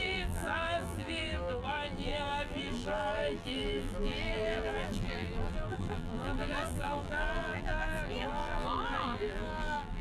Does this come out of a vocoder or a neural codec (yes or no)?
yes